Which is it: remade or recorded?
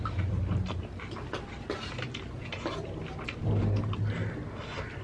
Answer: recorded